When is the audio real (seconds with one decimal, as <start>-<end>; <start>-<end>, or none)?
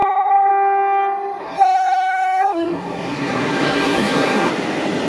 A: 0.5-1.4; 4.5-5.1